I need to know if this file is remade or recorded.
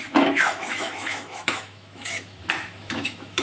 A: remade